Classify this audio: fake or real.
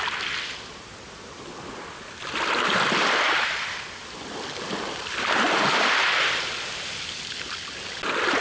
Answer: real